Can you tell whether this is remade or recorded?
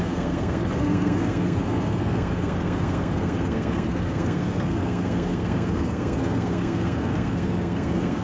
remade